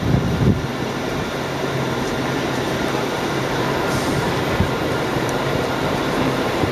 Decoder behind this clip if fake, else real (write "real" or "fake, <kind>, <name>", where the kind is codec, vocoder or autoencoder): fake, vocoder, BigVGAN v2